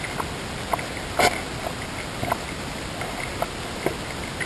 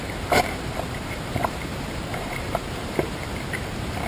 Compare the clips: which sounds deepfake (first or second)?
second